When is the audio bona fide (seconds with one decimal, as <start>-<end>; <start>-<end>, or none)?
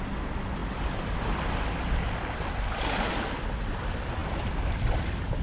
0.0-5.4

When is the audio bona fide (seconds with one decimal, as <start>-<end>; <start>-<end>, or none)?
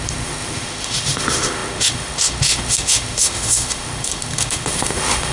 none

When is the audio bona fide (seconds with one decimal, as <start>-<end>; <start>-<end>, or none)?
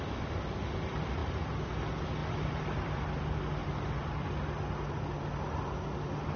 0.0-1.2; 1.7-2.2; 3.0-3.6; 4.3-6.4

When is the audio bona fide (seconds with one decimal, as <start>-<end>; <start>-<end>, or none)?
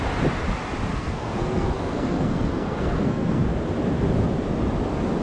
0.0-0.9; 3.4-5.2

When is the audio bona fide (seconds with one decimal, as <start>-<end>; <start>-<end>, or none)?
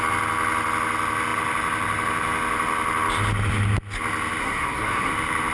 0.0-4.4; 5.1-5.5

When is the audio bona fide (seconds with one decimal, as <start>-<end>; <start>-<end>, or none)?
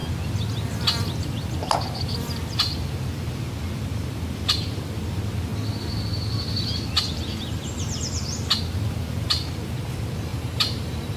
0.0-10.3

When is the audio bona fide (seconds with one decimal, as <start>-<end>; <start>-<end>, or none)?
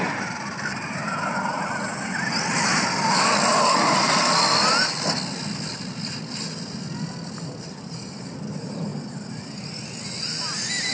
0.0-10.9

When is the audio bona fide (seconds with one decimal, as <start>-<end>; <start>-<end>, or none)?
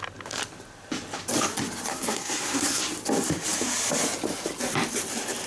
0.0-1.9; 2.8-5.5